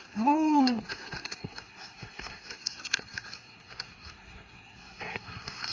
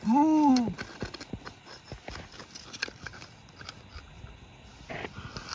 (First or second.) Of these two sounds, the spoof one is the first